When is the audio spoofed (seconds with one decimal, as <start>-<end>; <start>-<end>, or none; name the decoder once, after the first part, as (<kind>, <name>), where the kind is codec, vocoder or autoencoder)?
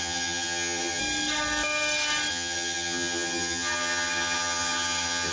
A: 0.0-1.0 (vocoder, HiFi-GAN); 2.3-5.3